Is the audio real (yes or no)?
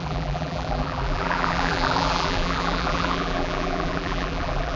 no